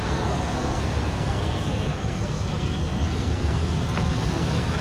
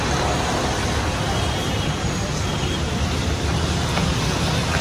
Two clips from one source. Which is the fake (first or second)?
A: first